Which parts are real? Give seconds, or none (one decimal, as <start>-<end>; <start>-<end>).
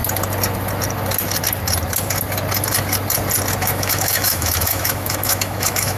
0.0-3.6